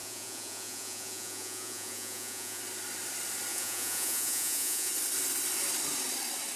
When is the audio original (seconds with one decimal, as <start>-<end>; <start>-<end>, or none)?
2.6-3.5; 4.9-6.6